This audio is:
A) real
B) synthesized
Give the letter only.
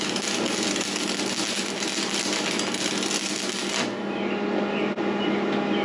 A